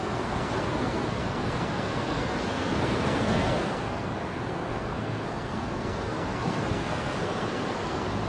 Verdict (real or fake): fake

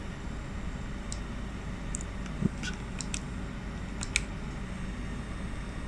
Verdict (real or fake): real